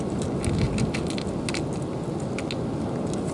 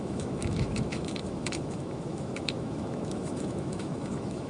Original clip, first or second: first